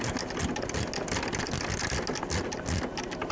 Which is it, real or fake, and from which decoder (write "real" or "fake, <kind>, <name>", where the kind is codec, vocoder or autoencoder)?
real